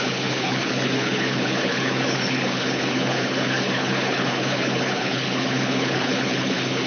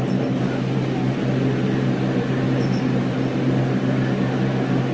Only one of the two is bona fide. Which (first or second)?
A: second